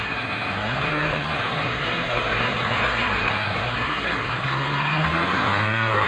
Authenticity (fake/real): fake